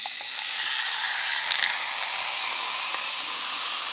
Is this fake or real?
fake